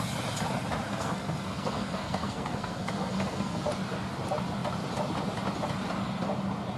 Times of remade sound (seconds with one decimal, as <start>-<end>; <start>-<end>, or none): 0.9-3.6